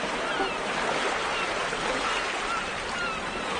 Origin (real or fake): real